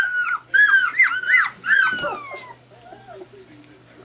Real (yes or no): yes